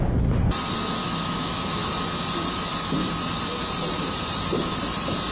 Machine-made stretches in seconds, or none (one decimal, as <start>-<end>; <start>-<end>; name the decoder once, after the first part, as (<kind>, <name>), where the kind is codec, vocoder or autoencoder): 1.0-1.9 (autoencoder, DAC-VAE)